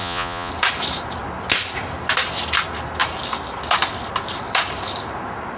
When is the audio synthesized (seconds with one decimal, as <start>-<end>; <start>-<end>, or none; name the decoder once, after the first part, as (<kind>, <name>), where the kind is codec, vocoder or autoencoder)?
0.0-0.5 (vocoder, Vocos)